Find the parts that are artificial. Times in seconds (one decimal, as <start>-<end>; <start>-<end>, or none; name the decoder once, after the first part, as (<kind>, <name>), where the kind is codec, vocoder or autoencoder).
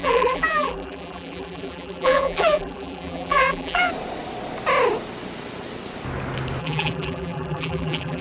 0.0-3.9 (vocoder, BigVGAN v2); 6.6-8.2